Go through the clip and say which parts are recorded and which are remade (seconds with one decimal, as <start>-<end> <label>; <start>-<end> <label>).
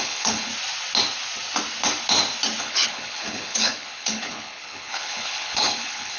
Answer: 0.0-0.5 remade; 0.5-2.6 recorded; 2.6-6.2 remade